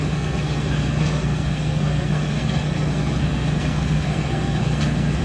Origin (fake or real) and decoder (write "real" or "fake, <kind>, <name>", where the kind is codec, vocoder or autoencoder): fake, codec, SNAC